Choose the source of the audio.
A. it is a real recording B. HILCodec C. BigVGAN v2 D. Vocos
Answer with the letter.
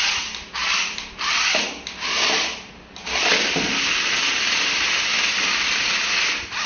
A